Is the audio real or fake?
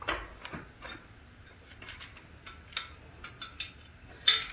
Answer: real